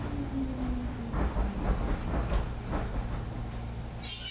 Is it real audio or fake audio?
real